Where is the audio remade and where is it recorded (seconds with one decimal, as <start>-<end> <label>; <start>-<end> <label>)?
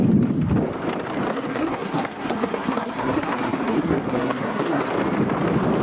0.0-1.3 recorded; 1.3-4.8 remade; 4.8-5.8 recorded